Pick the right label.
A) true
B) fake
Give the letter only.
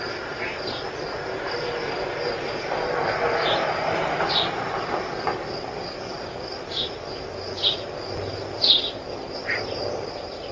A